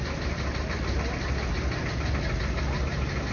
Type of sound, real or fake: real